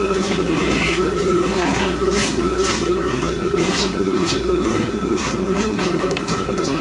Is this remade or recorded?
remade